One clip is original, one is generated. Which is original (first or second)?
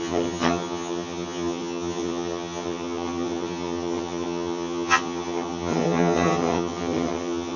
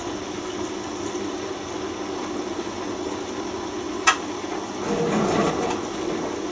second